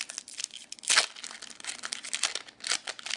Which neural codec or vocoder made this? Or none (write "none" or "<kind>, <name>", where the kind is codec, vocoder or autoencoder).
none